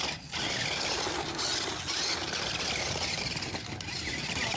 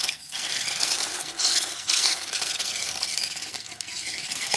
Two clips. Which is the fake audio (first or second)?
second